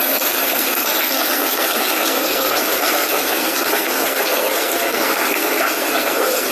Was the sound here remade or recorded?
remade